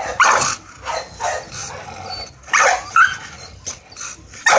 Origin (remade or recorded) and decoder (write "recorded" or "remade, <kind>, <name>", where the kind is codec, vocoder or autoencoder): recorded